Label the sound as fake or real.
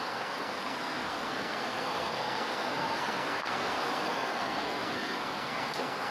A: fake